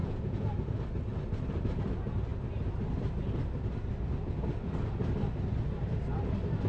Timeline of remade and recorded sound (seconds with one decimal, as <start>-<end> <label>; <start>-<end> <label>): 0.0-0.5 remade; 0.5-6.7 recorded